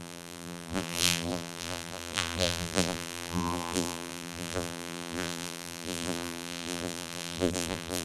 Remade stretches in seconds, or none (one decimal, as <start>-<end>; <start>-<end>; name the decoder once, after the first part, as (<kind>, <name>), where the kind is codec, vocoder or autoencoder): 0.0-8.0 (vocoder, BigVGAN v2)